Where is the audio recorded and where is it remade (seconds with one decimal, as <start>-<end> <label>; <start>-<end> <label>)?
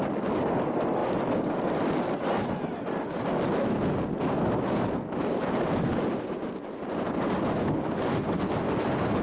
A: 0.0-9.2 recorded